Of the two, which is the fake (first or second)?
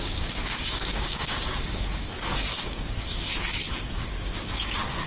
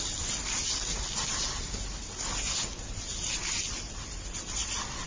first